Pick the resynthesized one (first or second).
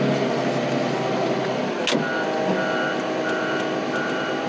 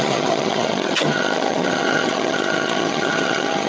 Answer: second